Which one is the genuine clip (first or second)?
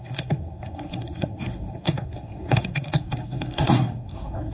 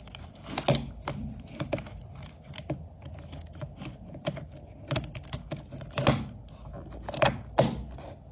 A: second